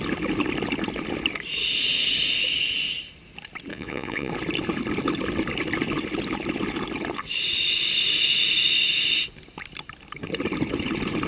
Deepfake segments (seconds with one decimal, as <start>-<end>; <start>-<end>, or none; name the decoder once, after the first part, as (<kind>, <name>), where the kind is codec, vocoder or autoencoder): 3.7-4.3 (vocoder, Vocos)